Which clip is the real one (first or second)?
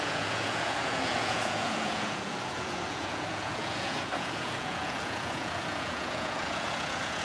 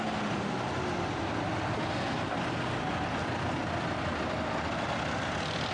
second